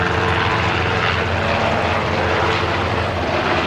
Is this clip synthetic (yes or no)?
yes